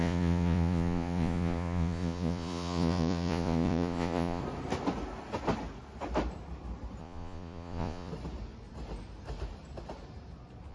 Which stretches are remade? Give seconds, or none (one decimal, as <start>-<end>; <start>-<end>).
0.0-4.4; 7.0-8.1